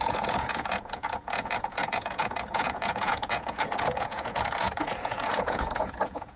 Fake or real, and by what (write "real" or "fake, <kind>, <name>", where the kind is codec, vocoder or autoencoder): fake, vocoder, Vocos